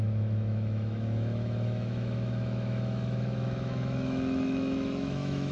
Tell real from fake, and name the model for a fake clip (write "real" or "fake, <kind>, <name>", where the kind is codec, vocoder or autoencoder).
fake, autoencoder, DAC-VAE